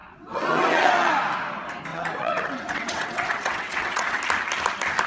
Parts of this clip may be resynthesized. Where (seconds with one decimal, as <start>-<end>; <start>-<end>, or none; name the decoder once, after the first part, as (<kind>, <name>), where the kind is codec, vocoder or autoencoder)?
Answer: 0.0-1.1 (vocoder, WaveNeXt); 1.9-4.2

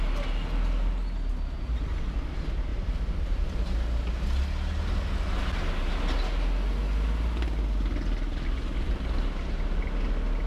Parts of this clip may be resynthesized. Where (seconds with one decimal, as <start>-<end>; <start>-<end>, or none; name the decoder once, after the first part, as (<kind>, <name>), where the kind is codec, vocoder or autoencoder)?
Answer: 2.7-3.7 (vocoder, BigVGAN v2)

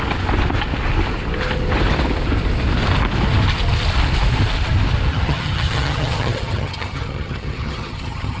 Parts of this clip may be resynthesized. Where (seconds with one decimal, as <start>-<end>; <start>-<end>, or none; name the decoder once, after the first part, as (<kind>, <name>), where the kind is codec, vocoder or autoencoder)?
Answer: 5.1-8.4 (vocoder, HiFi-GAN)

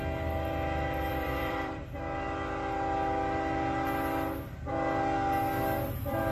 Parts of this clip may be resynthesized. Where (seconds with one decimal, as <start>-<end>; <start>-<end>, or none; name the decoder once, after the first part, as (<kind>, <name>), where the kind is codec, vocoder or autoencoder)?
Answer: 1.1-1.8 (vocoder, BigVGAN v2)